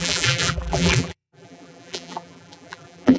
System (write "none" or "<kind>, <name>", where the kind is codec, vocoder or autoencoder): vocoder, BigVGAN v2